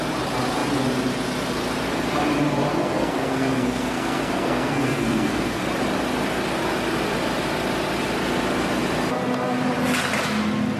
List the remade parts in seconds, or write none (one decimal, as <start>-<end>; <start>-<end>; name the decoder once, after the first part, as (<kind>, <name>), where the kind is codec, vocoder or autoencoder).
2.7-5.6 (codec, SNAC)